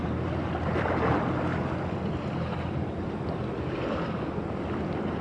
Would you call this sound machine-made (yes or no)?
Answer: yes